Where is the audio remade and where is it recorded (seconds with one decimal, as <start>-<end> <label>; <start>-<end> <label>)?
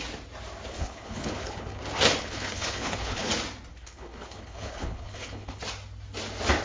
0.0-0.7 recorded; 0.7-1.8 remade; 1.8-2.2 recorded; 2.2-3.3 remade; 3.3-3.7 recorded; 3.7-5.6 remade; 5.6-6.6 recorded